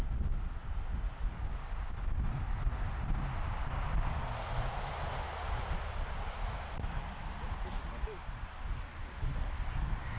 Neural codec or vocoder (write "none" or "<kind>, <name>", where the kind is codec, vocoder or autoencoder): none